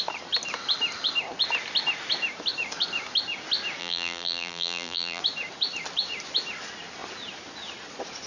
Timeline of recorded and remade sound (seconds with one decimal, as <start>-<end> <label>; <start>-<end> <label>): 0.0-3.8 recorded; 3.8-5.2 remade; 5.2-8.3 recorded